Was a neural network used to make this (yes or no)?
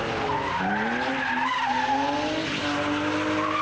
no